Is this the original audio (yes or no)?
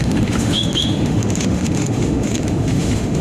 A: no